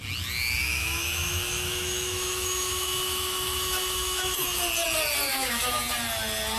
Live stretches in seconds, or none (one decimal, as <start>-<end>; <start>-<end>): 0.0-0.6; 4.6-5.3; 5.8-6.6